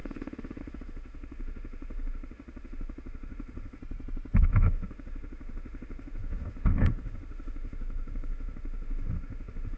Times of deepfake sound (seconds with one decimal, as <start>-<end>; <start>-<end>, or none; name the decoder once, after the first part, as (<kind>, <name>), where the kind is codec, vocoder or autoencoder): 0.0-3.8 (autoencoder, DAC-VAE); 4.4-9.8